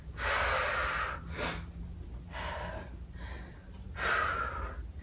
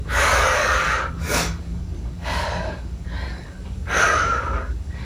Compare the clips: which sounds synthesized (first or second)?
second